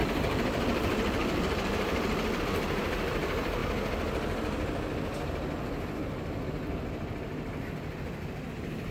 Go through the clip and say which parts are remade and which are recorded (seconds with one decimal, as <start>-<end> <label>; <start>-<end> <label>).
0.0-3.6 remade; 3.6-8.5 recorded; 8.5-8.9 remade